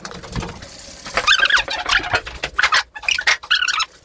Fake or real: real